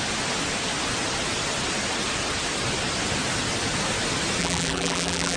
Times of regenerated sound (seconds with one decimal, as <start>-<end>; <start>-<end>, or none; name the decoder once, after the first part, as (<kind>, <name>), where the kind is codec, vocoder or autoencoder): 4.4-5.4 (vocoder, BigVGAN v2)